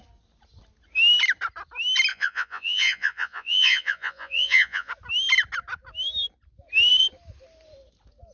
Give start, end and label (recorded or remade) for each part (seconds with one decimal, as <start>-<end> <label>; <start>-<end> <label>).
0.0-2.1 recorded; 2.1-4.9 remade; 4.9-8.3 recorded